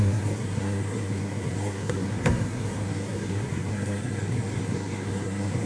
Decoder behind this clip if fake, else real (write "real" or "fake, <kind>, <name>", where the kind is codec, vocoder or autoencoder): fake, codec, SNAC